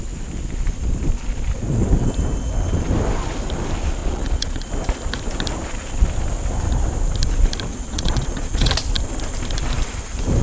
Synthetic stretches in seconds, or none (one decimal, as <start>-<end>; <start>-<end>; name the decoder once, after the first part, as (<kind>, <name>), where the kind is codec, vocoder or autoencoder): 4.0-4.7 (vocoder, Vocos); 7.7-8.7